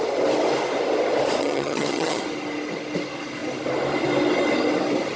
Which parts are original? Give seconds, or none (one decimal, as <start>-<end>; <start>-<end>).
0.0-1.4; 2.2-5.2